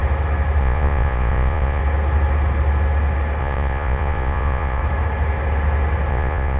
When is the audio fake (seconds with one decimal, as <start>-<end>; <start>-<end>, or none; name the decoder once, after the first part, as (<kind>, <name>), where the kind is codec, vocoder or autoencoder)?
0.6-1.8 (vocoder, Vocos); 3.4-4.8; 6.1-6.6